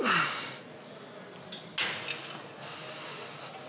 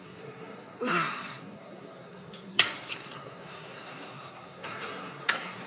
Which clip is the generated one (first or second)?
second